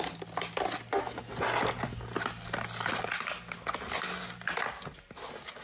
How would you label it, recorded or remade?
recorded